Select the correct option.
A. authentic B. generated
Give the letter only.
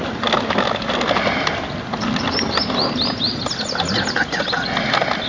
A